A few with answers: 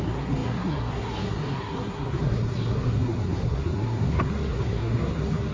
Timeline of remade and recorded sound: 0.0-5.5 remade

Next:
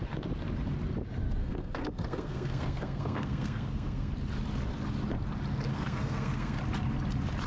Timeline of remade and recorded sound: 0.0-1.4 recorded; 1.4-4.1 remade; 4.1-5.7 recorded; 5.7-6.6 remade; 6.6-7.5 recorded

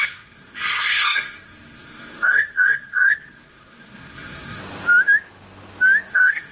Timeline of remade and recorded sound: 0.0-4.6 remade; 4.6-6.1 recorded; 6.1-6.5 remade

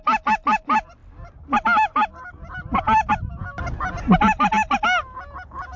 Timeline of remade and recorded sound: 0.0-5.8 recorded

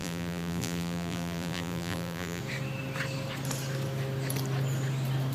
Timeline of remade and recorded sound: 0.0-2.4 remade; 2.4-5.3 recorded

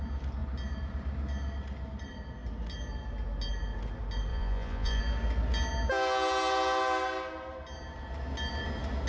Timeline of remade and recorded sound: 0.0-4.3 recorded; 4.3-5.0 remade; 5.0-9.1 recorded

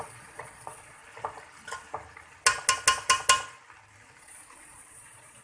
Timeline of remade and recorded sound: 0.0-1.0 remade; 1.0-4.2 recorded; 4.2-5.4 remade